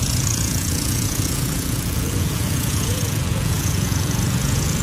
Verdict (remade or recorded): remade